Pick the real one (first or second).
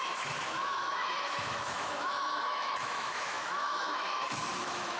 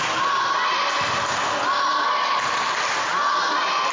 second